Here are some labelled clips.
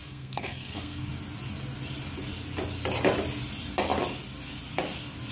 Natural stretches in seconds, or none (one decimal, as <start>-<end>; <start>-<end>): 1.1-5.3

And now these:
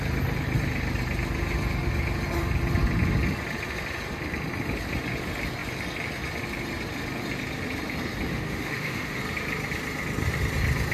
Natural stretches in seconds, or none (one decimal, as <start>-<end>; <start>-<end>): 0.0-8.3; 9.2-10.9

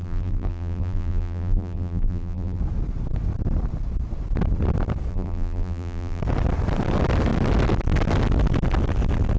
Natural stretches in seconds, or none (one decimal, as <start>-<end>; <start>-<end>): 2.6-5.1; 6.2-9.4

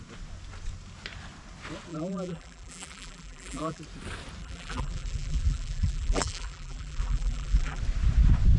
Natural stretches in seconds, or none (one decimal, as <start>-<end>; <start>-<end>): 0.0-1.9; 3.8-4.4; 7.8-8.6